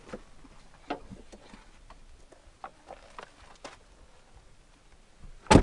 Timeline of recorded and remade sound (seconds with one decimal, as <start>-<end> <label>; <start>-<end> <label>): 0.0-5.6 recorded

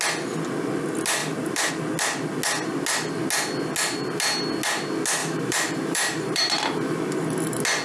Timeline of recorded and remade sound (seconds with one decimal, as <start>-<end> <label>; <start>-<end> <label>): 0.0-1.2 recorded; 1.2-1.7 remade; 1.7-5.2 recorded; 5.2-7.0 remade; 7.0-7.8 recorded